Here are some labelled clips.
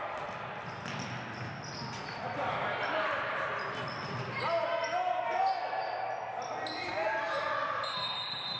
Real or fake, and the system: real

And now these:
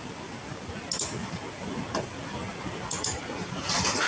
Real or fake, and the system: real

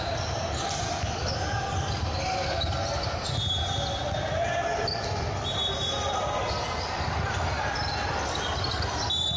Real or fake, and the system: real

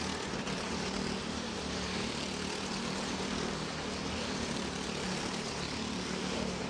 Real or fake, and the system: real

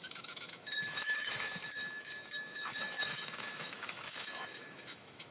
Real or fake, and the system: fake, autoencoder, DAC-VAE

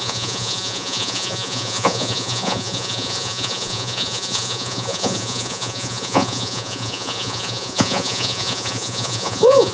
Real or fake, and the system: fake, vocoder, Vocos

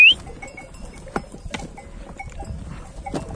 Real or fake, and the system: real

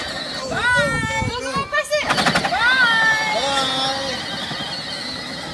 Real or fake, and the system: real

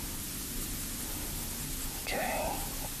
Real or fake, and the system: real